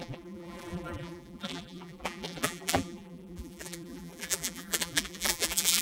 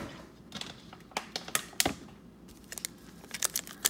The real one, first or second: second